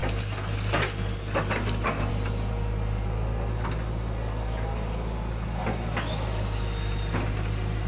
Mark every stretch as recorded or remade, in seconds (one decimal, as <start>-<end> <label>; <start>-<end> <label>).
0.0-2.1 recorded; 2.1-7.9 remade

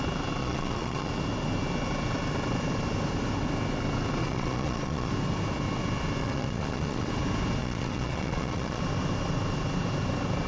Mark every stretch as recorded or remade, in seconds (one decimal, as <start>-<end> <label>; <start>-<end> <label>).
0.0-0.4 recorded; 0.4-1.1 remade; 1.1-4.2 recorded; 4.2-5.1 remade; 5.1-6.2 recorded; 6.2-7.1 remade; 7.1-7.6 recorded; 7.6-8.8 remade; 8.8-10.5 recorded

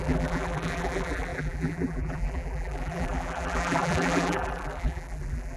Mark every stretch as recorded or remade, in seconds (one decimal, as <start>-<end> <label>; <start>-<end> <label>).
0.0-5.6 remade

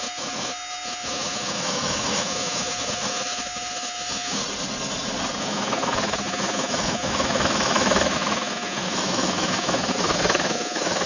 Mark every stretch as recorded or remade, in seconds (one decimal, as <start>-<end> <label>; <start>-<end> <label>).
0.0-4.4 remade; 4.4-5.4 recorded; 5.4-11.1 remade

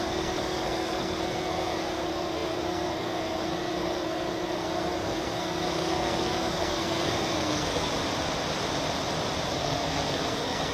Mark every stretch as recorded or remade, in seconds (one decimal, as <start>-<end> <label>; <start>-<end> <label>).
0.0-7.9 remade; 7.9-9.5 recorded; 9.5-10.7 remade

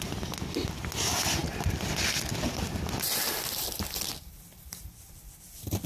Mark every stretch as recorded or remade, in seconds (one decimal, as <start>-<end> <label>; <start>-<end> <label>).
0.0-5.9 recorded